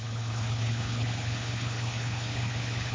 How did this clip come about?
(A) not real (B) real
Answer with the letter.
A